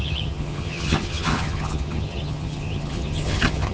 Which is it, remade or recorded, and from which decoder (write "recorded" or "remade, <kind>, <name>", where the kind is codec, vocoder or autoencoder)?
remade, vocoder, HiFi-GAN